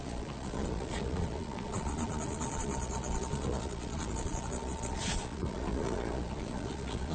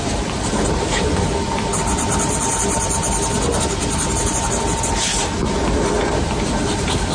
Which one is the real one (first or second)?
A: second